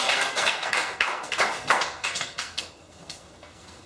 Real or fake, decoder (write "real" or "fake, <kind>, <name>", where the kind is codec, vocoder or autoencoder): fake, codec, SNAC